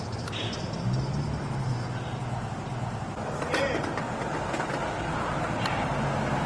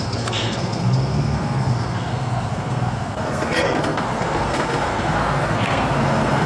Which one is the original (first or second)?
first